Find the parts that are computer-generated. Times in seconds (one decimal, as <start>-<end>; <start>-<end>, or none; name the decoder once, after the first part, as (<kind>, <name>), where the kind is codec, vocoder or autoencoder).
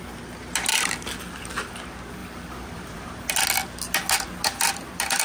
0.7-1.3 (vocoder, BigVGAN v2); 2.2-3.3